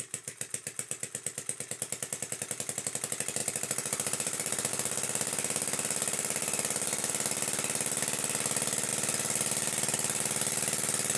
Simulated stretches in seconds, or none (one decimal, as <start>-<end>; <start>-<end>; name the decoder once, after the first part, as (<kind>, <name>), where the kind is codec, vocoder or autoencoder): 3.4-4.7 (vocoder, BigVGAN v2); 6.4-7.1; 8.9-11.2